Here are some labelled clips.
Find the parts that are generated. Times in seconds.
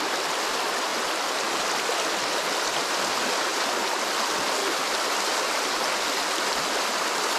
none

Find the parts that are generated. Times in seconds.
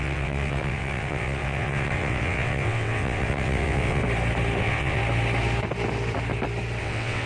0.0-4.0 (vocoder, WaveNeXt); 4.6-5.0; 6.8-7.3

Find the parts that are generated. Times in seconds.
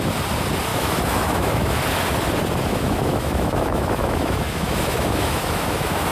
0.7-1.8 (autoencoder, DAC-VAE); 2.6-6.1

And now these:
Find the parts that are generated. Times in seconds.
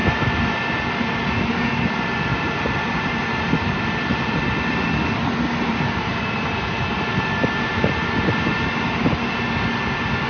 2.3-4.3 (vocoder, BigVGAN v2); 5.7-9.0